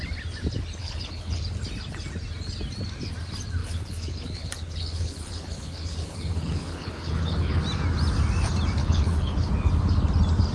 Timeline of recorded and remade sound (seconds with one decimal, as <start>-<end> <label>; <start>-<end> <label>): 0.0-0.8 recorded; 0.8-1.4 remade; 1.4-3.6 recorded; 3.6-7.6 remade; 7.6-8.8 recorded; 8.8-9.5 remade; 9.5-10.5 recorded

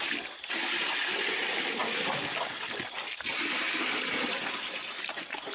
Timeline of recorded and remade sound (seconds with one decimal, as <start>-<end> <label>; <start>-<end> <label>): 0.0-5.5 recorded

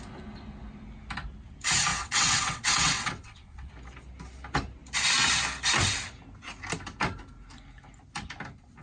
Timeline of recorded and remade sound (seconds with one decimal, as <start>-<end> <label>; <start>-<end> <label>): 0.0-1.9 recorded; 1.9-3.7 remade; 3.7-8.8 recorded

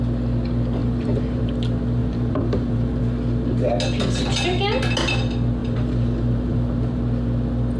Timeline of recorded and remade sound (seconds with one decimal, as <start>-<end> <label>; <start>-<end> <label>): 0.0-0.8 recorded; 0.8-1.4 remade; 1.4-2.0 recorded; 2.0-3.0 remade; 3.0-5.6 recorded; 5.6-7.0 remade; 7.0-7.8 recorded

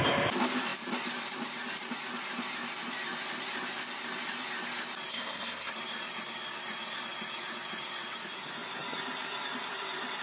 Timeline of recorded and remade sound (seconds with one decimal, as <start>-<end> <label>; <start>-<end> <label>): 0.0-5.1 recorded; 5.1-5.7 remade; 5.7-10.2 recorded

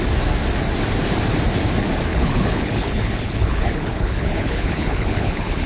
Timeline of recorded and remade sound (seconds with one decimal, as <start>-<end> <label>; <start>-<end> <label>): 0.0-2.1 recorded; 2.1-5.7 remade

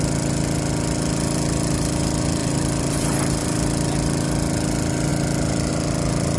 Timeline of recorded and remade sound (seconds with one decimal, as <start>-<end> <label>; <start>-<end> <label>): 0.0-2.4 recorded; 2.4-3.4 remade; 3.4-6.4 recorded